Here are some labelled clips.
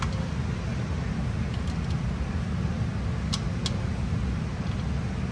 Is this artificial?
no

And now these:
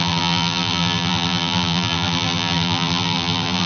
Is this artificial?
yes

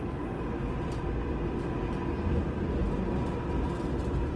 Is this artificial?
no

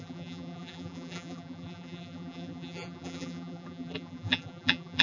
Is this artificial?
yes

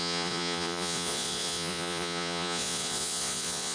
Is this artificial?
yes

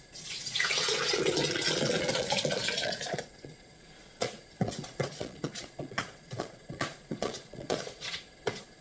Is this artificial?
yes